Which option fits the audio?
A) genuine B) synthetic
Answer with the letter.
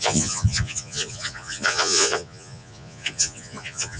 B